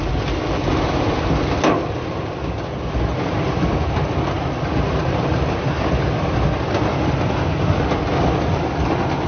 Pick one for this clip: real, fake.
real